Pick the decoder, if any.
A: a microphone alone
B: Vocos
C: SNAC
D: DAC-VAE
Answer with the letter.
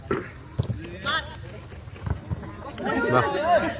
A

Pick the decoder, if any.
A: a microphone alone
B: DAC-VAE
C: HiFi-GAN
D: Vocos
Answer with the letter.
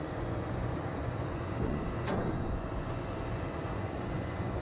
D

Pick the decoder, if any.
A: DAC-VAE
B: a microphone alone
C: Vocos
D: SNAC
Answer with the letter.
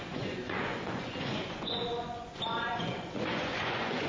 C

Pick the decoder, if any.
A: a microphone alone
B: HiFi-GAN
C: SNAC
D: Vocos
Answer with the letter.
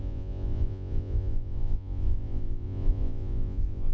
D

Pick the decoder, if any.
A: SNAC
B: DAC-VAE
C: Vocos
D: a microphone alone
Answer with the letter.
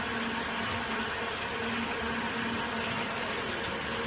D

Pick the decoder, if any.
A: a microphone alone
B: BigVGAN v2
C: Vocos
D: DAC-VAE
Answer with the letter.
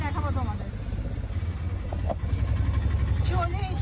A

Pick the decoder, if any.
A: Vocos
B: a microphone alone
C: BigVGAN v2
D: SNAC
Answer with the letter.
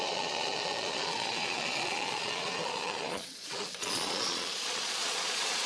A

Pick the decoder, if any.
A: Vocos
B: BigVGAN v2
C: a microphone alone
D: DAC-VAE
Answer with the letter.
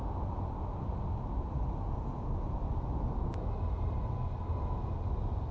C